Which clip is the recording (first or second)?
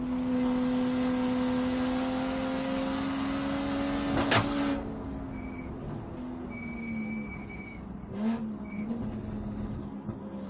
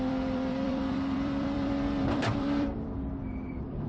first